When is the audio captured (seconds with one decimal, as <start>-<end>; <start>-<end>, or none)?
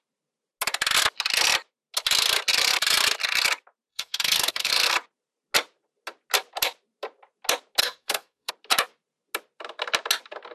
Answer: 0.0-3.9; 4.7-7.8; 8.5-10.5